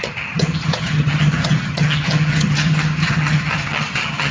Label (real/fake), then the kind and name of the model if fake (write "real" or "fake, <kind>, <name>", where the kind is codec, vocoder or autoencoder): fake, vocoder, HiFi-GAN